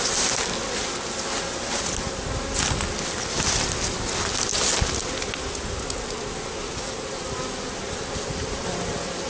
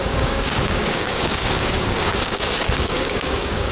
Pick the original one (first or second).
first